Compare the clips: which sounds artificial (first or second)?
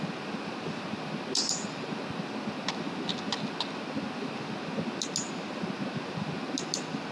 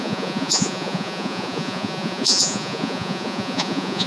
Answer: second